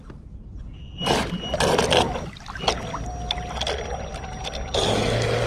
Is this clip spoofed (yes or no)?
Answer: no